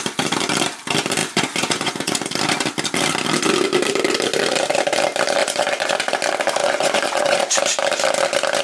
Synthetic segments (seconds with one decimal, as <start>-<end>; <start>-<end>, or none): 1.2-2.2; 5.4-5.9; 6.6-7.4